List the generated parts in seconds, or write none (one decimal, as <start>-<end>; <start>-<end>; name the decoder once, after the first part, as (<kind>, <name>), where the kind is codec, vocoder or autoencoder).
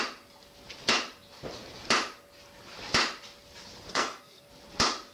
3.9-4.5 (codec, SNAC)